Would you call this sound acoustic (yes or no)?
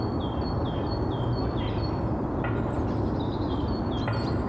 yes